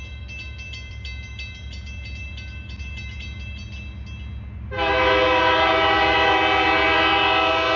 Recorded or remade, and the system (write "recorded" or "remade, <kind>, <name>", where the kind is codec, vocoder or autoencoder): recorded